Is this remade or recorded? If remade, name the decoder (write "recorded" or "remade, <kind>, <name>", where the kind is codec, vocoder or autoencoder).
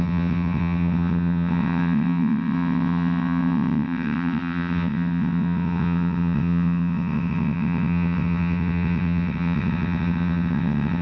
remade, vocoder, WaveNeXt